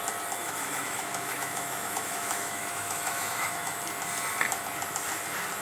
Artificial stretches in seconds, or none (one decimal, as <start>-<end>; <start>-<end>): 0.4-3.8